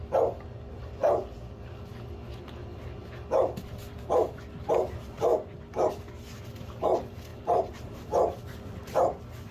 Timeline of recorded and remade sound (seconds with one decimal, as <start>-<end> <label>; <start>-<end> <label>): 0.0-7.3 recorded; 7.3-7.9 remade; 7.9-9.5 recorded